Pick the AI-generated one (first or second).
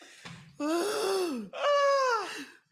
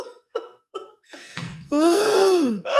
second